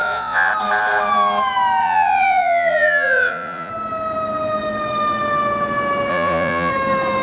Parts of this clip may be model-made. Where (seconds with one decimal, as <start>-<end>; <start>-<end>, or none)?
0.0-0.5; 1.8-3.7; 6.1-6.7